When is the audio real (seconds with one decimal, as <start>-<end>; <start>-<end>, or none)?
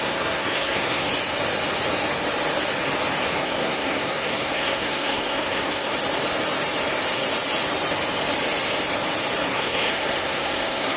1.1-3.2; 5.9-9.5